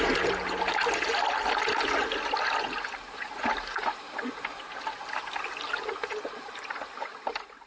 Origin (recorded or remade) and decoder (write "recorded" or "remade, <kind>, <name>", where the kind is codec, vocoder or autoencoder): recorded